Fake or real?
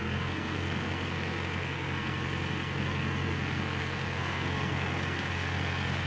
fake